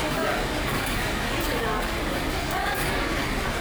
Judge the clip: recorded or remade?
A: remade